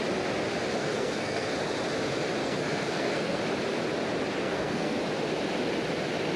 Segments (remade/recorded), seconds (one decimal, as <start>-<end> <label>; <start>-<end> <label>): 0.0-0.8 recorded; 0.8-1.5 remade; 1.5-2.4 recorded; 2.4-3.4 remade; 3.4-4.4 recorded; 4.4-5.0 remade; 5.0-6.4 recorded